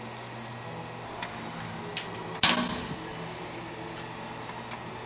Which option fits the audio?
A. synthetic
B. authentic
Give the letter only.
B